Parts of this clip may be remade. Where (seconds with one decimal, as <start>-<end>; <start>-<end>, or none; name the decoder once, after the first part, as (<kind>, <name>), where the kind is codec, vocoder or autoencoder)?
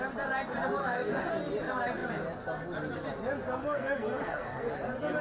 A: 0.8-1.3 (codec, SNAC); 3.6-4.7